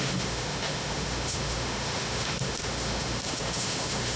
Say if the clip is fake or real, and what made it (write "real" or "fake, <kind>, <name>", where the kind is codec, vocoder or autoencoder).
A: fake, autoencoder, DAC-VAE